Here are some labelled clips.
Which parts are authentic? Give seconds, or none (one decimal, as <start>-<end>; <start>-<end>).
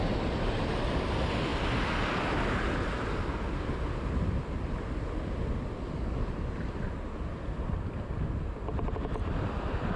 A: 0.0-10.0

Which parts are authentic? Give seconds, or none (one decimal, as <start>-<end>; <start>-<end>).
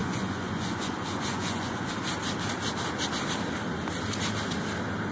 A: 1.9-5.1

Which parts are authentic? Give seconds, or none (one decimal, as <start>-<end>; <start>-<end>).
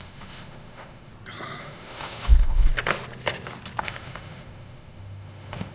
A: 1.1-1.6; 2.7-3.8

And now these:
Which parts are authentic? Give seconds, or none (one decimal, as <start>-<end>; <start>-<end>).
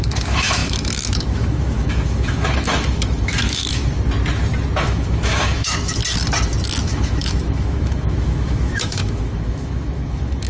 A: 3.8-4.8; 6.0-6.8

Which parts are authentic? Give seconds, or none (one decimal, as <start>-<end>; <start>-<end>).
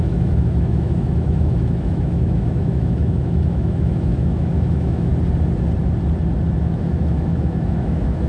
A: 5.1-6.6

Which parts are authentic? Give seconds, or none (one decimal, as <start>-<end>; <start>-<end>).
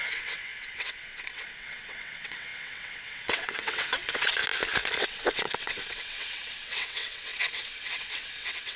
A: 4.4-5.0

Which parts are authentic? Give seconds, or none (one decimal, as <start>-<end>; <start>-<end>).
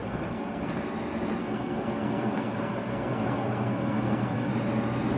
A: 0.7-1.4; 4.5-5.2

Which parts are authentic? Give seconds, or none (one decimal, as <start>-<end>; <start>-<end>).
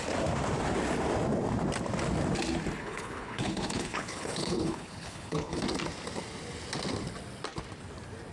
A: 0.0-2.8; 5.6-8.3